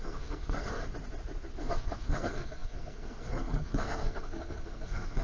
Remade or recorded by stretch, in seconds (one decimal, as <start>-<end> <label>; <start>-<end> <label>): 0.0-0.8 remade; 0.8-1.7 recorded; 1.7-5.2 remade